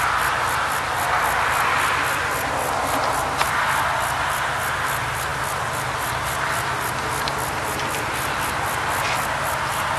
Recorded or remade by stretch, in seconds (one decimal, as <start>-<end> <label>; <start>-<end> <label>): 0.0-10.0 recorded